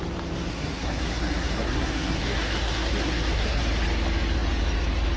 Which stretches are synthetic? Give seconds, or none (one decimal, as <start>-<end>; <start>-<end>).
0.5-3.6